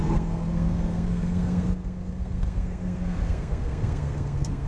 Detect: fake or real fake